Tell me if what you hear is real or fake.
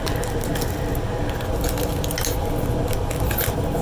real